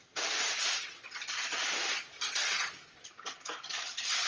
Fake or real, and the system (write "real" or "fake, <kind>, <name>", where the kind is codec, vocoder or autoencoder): real